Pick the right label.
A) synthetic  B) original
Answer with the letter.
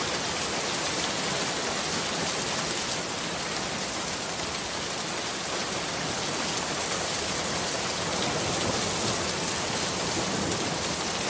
B